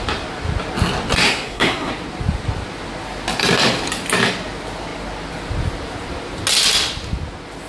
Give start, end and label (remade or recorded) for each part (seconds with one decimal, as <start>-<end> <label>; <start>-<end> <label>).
0.0-1.2 recorded; 1.2-1.9 remade; 1.9-7.7 recorded